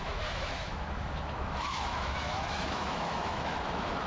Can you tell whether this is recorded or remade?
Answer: remade